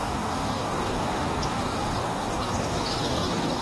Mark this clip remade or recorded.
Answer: remade